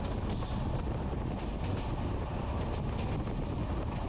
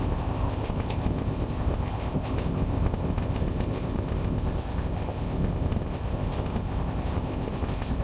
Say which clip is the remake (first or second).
second